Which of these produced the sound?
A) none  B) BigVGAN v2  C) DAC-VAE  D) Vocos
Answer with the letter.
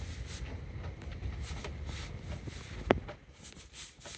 A